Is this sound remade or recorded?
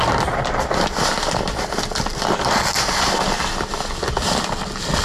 recorded